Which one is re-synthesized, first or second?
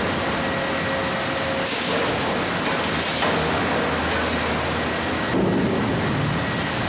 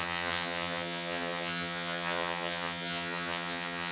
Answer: second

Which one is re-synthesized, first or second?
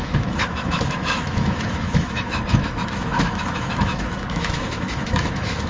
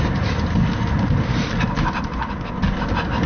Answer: first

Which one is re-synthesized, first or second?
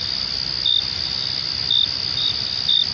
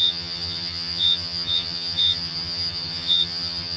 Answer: second